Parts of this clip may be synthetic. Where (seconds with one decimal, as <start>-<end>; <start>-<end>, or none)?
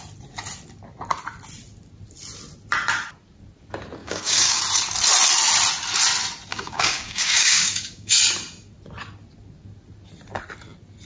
4.0-4.6; 6.5-8.2